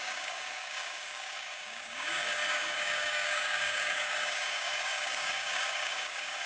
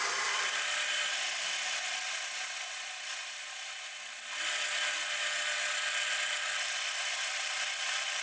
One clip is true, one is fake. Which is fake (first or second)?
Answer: first